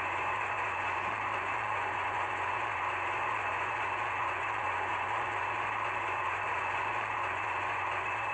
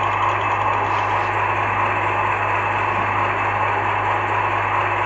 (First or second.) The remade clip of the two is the first